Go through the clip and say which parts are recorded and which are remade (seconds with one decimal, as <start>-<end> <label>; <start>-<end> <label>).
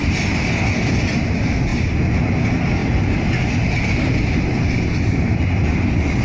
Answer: 0.0-6.2 recorded